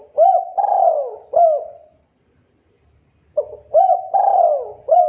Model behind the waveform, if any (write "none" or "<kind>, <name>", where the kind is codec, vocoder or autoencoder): none